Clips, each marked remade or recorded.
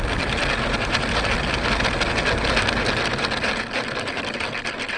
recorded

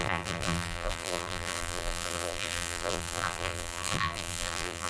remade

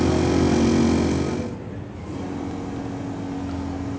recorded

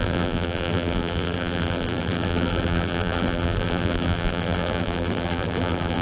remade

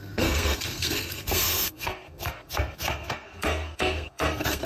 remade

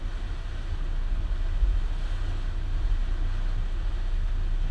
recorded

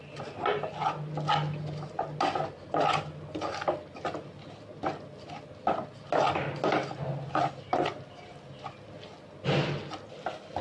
recorded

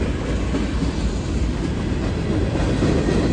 recorded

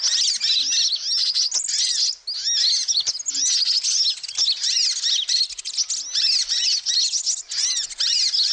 recorded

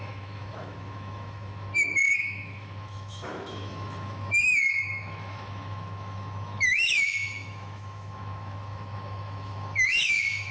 remade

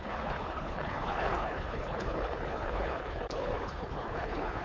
remade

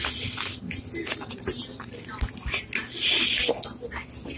recorded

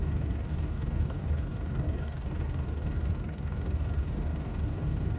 remade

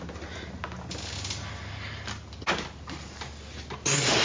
recorded